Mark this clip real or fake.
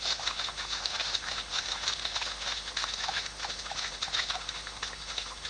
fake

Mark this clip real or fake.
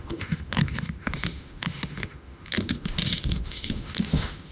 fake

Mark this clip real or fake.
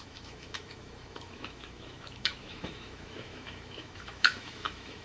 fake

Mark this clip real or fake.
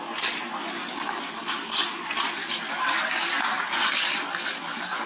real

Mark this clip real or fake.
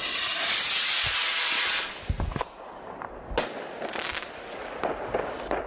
real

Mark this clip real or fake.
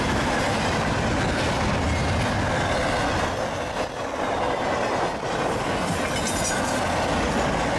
real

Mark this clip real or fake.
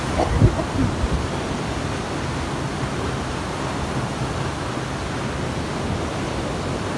real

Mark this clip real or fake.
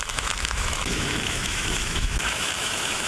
fake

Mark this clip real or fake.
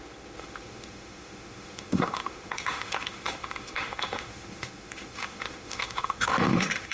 fake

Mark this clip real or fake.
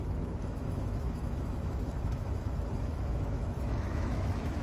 fake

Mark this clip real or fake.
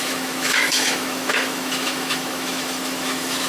fake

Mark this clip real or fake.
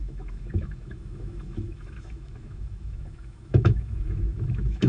fake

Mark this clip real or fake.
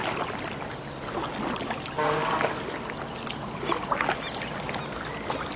real